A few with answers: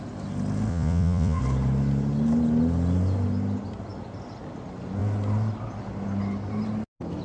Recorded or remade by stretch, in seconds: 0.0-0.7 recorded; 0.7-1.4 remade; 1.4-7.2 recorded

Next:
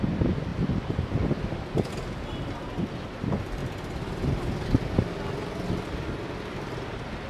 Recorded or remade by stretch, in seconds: 0.0-0.5 recorded; 0.5-1.9 remade; 1.9-7.3 recorded